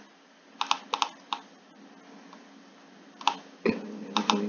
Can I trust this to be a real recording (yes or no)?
yes